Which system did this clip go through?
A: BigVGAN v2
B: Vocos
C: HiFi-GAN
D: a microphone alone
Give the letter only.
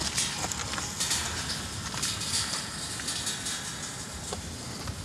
D